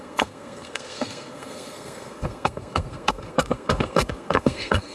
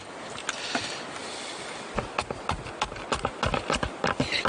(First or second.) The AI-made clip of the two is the first